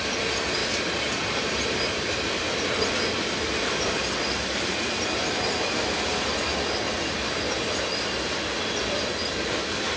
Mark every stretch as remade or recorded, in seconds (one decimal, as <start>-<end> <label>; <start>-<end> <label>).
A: 0.0-0.6 recorded; 0.6-4.9 remade; 4.9-10.0 recorded